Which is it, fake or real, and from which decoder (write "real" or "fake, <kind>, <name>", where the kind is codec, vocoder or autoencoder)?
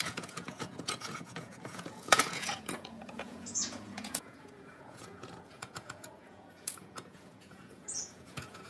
fake, vocoder, Vocos